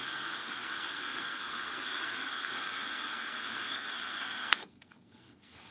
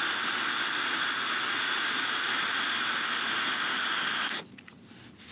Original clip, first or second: second